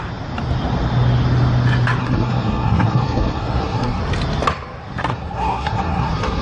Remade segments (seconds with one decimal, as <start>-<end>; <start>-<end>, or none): 2.0-4.0; 5.1-6.4